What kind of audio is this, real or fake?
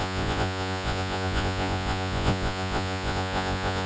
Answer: fake